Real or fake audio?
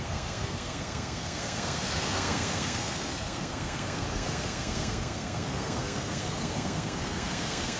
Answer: fake